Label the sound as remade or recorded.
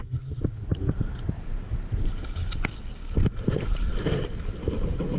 recorded